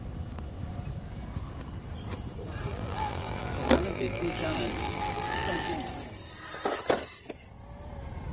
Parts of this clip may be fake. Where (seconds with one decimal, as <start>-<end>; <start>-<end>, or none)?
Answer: 2.7-5.7